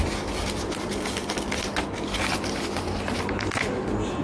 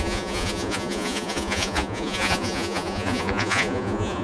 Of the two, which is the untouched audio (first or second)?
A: first